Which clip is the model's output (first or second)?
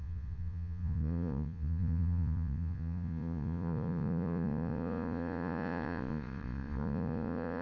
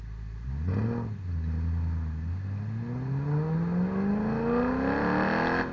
first